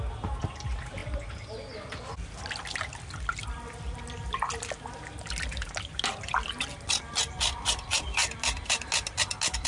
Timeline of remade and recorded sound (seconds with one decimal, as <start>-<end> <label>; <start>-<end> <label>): 0.0-9.7 recorded